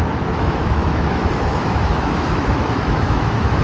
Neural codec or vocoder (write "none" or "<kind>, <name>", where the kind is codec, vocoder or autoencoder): autoencoder, DAC-VAE